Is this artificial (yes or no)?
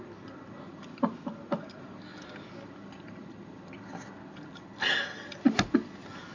no